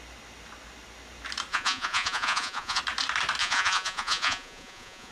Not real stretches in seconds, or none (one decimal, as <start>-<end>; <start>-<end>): 1.5-2.8; 3.4-5.1